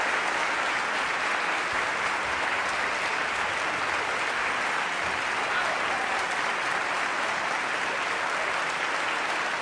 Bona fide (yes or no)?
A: yes